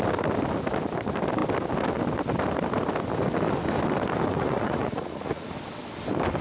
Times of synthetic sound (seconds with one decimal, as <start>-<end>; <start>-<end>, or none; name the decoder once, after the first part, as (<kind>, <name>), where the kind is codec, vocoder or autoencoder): 4.3-5.5 (vocoder, Vocos)